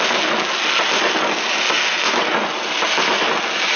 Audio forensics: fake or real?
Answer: real